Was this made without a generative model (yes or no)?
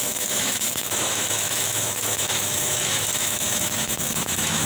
no